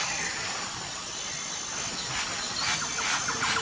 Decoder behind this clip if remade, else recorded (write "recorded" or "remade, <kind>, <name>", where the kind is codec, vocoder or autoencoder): recorded